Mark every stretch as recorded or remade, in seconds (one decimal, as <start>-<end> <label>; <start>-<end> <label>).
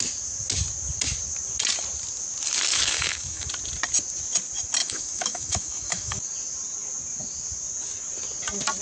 0.0-2.7 recorded; 2.7-3.5 remade; 3.5-4.8 recorded; 4.8-6.2 remade; 6.2-8.8 recorded